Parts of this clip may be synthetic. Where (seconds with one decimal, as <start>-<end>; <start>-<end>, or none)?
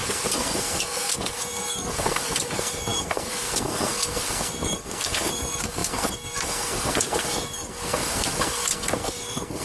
0.0-9.6